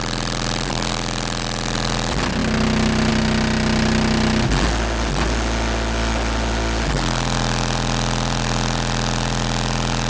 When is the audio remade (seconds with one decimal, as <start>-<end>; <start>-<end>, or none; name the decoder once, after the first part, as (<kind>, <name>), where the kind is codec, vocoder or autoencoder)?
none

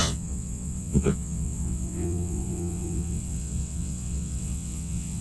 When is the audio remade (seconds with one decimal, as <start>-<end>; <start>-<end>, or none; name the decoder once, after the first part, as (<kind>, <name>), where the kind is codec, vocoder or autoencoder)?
0.0-5.2 (vocoder, WaveNeXt)

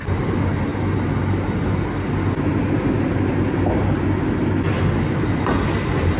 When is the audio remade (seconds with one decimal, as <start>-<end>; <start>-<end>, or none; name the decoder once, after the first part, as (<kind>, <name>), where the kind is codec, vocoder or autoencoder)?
none

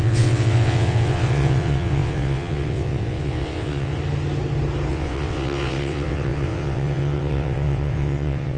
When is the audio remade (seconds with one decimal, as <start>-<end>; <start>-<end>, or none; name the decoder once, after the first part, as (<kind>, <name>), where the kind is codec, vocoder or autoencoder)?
0.0-3.9 (vocoder, WaveNeXt); 4.9-8.6

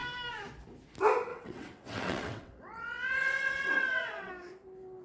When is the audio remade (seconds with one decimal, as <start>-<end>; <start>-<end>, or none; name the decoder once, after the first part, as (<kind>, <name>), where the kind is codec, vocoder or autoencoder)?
1.3-4.3 (vocoder, WaveNeXt)